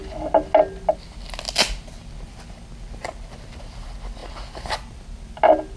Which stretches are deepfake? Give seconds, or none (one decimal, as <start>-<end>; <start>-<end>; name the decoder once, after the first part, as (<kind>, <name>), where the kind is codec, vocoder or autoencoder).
none